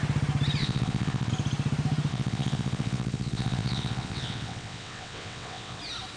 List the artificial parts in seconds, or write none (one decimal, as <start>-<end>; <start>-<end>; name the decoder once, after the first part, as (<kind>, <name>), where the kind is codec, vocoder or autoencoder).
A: 0.6-1.3 (vocoder, WaveNeXt); 2.1-5.8